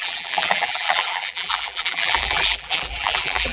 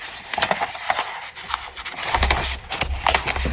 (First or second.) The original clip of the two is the second